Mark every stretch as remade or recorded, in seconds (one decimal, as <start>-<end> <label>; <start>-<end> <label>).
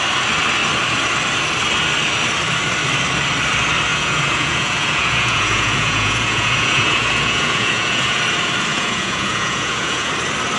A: 0.0-3.9 recorded; 3.9-8.2 remade; 8.2-8.7 recorded; 8.7-10.1 remade; 10.1-10.6 recorded